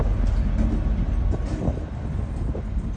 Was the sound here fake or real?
real